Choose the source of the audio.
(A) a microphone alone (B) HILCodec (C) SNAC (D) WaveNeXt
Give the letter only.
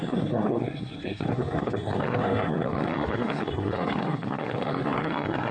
C